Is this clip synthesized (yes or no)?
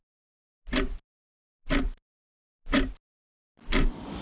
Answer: no